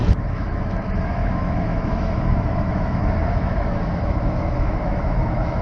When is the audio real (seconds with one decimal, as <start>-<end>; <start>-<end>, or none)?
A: none